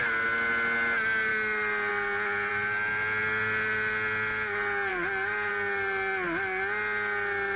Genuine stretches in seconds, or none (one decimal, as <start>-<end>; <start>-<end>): 0.0-7.6